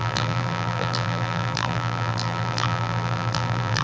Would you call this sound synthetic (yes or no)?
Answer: yes